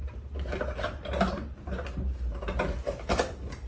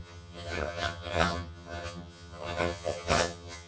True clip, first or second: first